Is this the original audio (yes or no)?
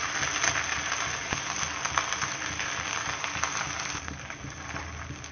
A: yes